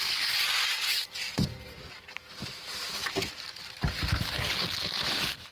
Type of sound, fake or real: real